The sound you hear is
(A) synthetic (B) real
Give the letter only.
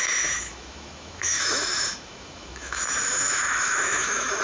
A